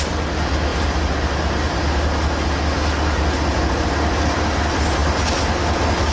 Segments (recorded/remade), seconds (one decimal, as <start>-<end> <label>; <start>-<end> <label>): 0.0-6.1 recorded